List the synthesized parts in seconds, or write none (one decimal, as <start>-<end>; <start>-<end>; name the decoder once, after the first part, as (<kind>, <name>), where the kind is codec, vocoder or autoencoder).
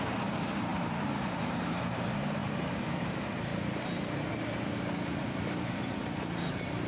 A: 0.0-3.5 (vocoder, BigVGAN v2); 5.3-6.9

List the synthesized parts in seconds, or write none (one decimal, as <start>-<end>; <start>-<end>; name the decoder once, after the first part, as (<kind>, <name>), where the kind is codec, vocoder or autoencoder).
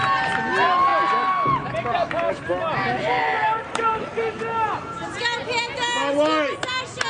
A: 3.4-4.1 (vocoder, BigVGAN v2)